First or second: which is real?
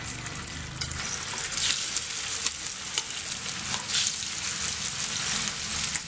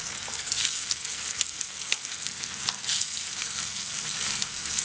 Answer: first